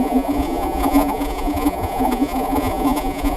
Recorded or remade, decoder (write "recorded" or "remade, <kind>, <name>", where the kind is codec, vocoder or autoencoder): remade, vocoder, Vocos